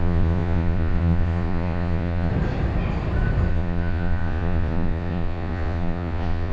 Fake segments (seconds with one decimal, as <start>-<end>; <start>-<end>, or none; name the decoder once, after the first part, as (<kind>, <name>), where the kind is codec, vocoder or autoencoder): 0.0-2.3 (vocoder, Vocos); 3.5-6.5